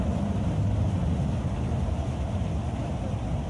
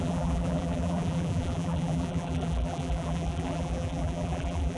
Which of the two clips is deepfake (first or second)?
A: second